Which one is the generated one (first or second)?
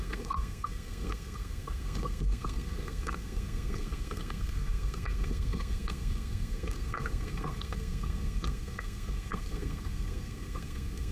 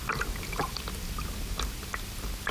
first